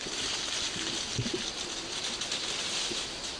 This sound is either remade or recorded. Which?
recorded